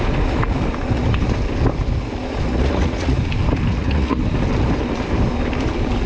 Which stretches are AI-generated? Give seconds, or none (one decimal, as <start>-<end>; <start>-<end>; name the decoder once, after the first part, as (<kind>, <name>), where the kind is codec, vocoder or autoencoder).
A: 2.5-3.2 (vocoder, Vocos); 3.7-4.2